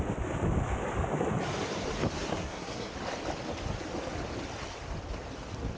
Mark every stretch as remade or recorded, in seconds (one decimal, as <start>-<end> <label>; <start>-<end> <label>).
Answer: 0.0-2.3 recorded; 2.3-2.9 remade; 2.9-5.8 recorded